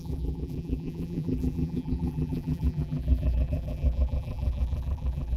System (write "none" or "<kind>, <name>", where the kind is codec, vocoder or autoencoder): vocoder, BigVGAN v2